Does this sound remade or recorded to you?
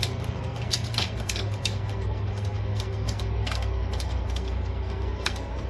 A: remade